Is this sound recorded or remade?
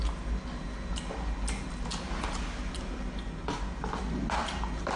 recorded